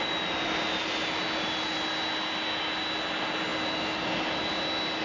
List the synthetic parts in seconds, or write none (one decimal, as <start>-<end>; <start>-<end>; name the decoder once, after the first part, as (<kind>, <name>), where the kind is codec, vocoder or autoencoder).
none